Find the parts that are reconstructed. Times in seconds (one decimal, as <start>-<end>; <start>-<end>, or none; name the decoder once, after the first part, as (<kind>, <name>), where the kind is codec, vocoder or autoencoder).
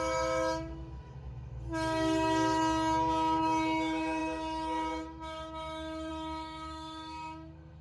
0.0-2.6 (autoencoder, DAC-VAE); 3.4-7.8